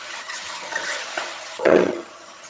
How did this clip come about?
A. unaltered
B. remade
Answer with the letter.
B